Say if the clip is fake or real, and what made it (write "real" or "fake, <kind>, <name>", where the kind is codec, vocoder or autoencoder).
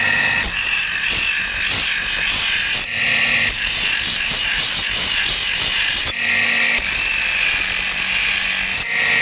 real